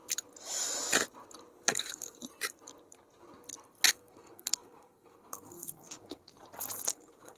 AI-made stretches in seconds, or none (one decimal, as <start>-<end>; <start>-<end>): 1.7-2.2; 3.9-6.3; 6.9-7.4